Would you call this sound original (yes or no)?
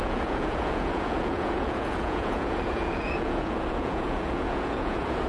no